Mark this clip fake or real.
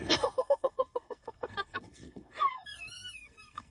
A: fake